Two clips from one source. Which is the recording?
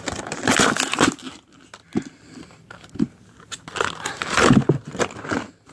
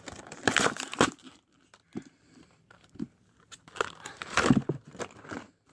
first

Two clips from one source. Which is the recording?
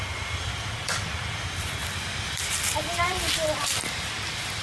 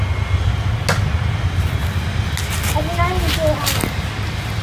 second